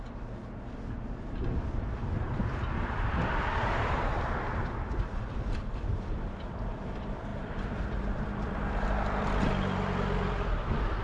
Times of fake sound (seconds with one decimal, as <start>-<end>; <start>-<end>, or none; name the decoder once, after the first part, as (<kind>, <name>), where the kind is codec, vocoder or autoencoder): 0.0-11.0 (vocoder, BigVGAN v2)